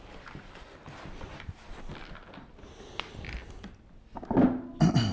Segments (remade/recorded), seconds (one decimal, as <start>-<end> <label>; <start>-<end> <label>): 0.0-5.1 recorded